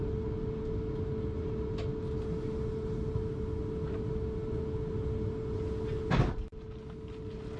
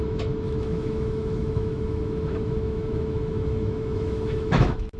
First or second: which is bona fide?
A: first